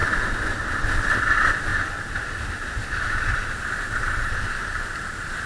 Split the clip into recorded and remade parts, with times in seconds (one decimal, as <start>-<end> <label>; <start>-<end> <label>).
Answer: 0.0-1.7 recorded; 1.7-2.4 remade; 2.4-5.5 recorded